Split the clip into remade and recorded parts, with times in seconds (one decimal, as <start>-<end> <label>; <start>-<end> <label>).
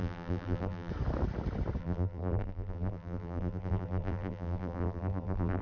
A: 0.0-0.9 remade; 0.9-1.8 recorded; 1.8-5.6 remade